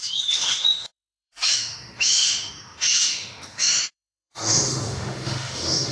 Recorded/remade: remade